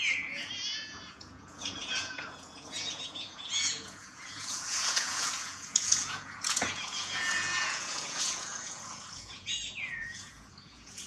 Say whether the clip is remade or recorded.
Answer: remade